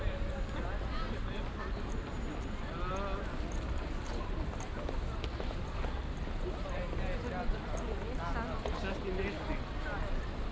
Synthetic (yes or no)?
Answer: no